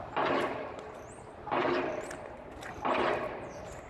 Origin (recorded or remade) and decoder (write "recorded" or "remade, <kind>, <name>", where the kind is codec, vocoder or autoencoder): recorded